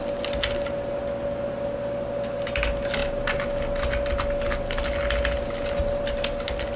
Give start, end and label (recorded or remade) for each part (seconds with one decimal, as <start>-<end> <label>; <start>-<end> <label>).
0.0-6.8 recorded